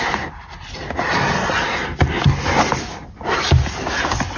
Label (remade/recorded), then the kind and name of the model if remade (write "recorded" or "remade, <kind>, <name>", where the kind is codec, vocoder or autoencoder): recorded